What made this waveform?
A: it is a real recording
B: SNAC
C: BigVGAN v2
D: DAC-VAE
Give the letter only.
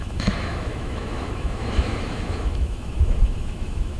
D